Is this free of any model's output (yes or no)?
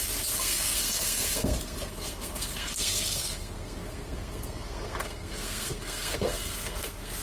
no